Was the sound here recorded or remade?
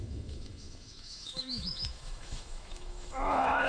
remade